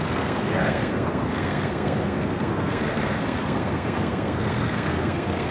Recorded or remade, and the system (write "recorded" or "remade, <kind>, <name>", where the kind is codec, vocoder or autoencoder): remade, codec, SNAC